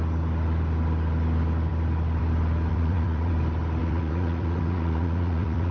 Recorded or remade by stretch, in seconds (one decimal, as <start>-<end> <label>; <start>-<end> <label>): 0.0-2.7 recorded; 2.7-3.3 remade; 3.3-3.8 recorded; 3.8-5.7 remade